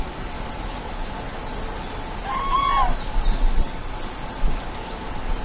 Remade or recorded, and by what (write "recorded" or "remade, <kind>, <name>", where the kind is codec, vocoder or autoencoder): recorded